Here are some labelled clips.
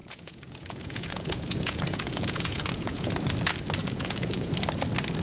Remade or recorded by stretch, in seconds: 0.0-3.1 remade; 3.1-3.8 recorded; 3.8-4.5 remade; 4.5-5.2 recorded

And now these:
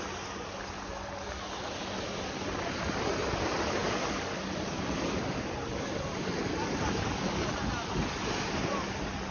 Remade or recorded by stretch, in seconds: 0.0-0.9 recorded; 0.9-1.5 remade; 1.5-3.8 recorded; 3.8-7.9 remade; 7.9-9.3 recorded

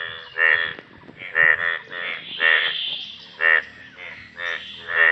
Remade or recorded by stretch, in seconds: 0.0-5.1 recorded